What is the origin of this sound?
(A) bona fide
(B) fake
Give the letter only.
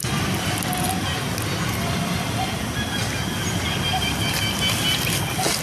A